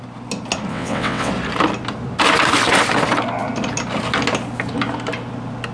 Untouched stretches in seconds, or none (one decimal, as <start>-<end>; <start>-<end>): 0.0-0.7; 1.3-5.7